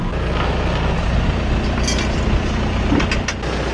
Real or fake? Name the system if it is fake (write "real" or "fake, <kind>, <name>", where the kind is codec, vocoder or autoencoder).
real